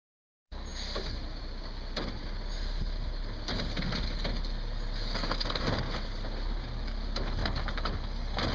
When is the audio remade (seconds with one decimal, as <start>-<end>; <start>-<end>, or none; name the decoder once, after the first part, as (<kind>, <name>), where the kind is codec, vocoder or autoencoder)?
none